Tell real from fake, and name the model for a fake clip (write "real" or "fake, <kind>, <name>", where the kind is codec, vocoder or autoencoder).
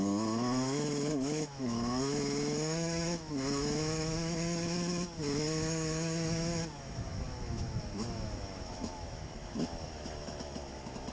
fake, autoencoder, DAC-VAE